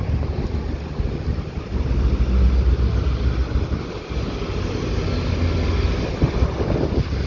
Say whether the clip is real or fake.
real